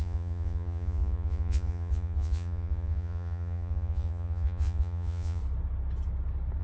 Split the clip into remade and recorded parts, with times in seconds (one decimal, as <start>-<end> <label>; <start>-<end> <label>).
0.0-5.4 remade; 5.4-6.6 recorded

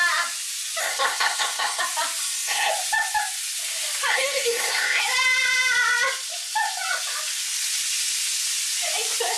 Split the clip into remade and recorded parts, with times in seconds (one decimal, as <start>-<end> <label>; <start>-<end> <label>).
0.0-0.8 recorded; 0.8-1.8 remade; 1.8-2.2 recorded; 2.2-2.7 remade; 2.7-4.1 recorded; 4.1-5.0 remade; 5.0-9.4 recorded

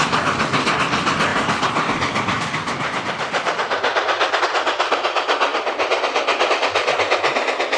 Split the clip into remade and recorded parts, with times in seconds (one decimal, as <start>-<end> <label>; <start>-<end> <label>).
0.0-1.3 recorded; 1.3-4.4 remade; 4.4-7.8 recorded

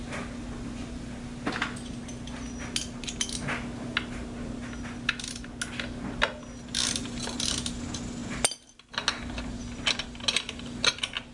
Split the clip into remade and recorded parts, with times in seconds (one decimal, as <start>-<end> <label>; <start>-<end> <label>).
0.0-11.3 recorded